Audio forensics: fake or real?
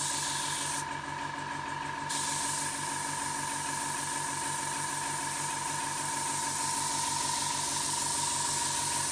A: real